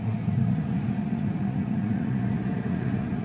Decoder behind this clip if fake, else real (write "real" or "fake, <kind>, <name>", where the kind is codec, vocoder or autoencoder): fake, vocoder, Vocos